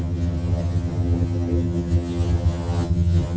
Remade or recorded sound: remade